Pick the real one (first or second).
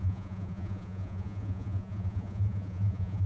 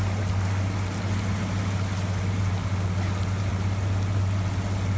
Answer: second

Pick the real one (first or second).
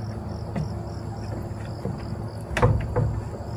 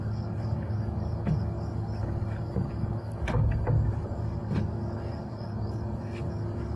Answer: first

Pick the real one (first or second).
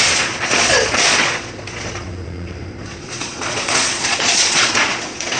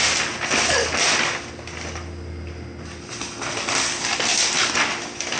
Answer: second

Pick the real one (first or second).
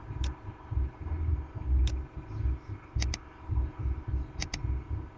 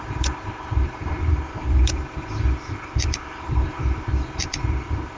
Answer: first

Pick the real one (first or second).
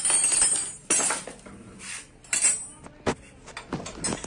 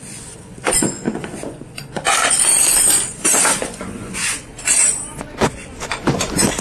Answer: first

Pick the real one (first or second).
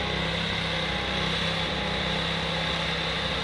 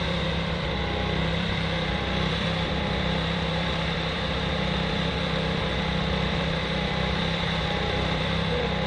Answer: first